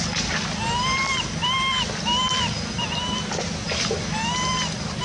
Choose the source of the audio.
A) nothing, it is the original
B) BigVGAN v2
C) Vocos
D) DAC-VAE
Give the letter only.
A